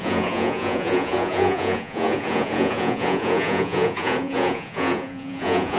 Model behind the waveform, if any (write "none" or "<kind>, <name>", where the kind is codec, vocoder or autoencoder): vocoder, Vocos